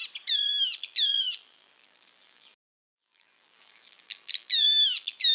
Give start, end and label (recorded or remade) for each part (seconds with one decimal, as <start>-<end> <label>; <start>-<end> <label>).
0.0-0.5 recorded; 0.5-5.3 remade